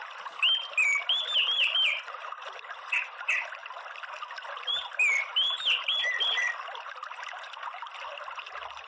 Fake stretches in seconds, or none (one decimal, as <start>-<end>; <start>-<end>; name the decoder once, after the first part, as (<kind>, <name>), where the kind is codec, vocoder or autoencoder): none